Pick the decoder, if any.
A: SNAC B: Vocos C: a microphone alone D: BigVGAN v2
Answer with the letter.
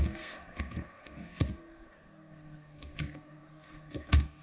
A